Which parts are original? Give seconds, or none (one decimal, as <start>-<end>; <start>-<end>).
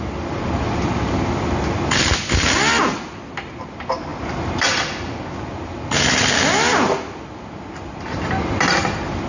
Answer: 0.0-9.3